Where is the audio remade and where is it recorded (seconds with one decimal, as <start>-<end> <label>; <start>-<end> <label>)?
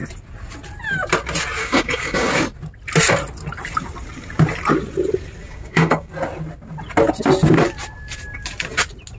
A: 0.0-1.6 recorded; 1.6-2.3 remade; 2.3-5.4 recorded; 5.4-6.1 remade; 6.1-9.2 recorded